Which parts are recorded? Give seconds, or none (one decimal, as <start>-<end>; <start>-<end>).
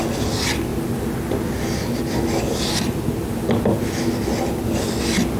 0.0-5.4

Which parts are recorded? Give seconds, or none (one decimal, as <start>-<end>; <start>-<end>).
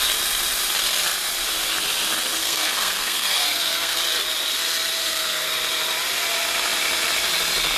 0.0-2.4; 4.0-5.0; 5.5-7.8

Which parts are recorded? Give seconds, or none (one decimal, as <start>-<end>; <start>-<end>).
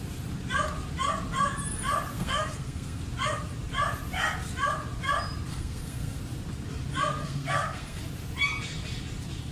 0.0-2.1; 3.0-5.5; 6.2-7.2; 8.0-9.5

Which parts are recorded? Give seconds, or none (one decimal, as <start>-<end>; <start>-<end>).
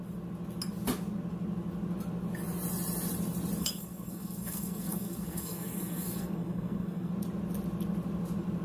0.0-3.6; 7.1-8.6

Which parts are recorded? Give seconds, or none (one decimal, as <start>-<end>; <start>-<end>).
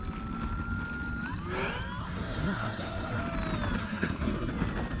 0.0-2.0; 3.2-3.8; 4.5-5.0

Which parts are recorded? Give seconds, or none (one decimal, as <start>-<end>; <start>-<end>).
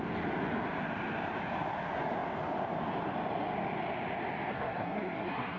0.0-4.5